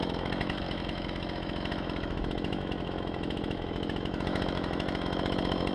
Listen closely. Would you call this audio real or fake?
fake